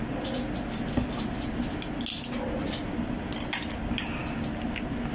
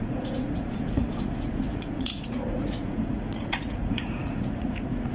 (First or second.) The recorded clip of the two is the first